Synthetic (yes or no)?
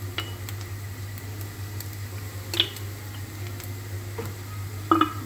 no